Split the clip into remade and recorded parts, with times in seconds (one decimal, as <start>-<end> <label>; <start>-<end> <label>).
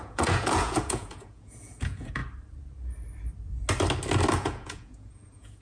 0.0-2.2 remade; 2.2-4.3 recorded; 4.3-5.6 remade